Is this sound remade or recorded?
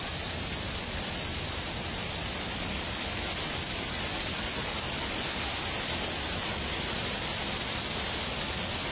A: remade